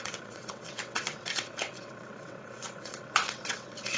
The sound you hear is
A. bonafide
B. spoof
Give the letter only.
B